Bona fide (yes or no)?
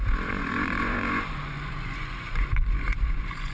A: no